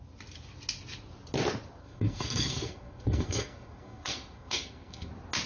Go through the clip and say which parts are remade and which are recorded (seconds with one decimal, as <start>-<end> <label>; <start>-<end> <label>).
0.0-1.8 recorded; 1.8-5.1 remade; 5.1-5.5 recorded